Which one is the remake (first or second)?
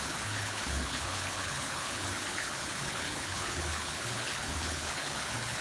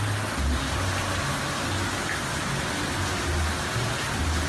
first